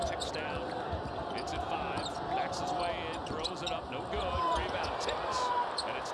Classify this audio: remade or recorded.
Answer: recorded